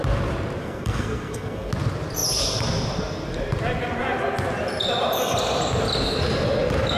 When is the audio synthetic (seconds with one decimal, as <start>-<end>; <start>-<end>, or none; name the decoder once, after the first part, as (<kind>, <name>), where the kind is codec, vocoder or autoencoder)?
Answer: 0.6-1.7 (codec, SNAC)